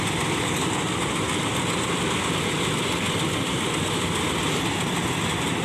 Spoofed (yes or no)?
no